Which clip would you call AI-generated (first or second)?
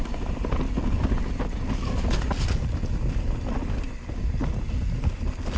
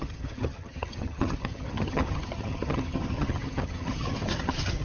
second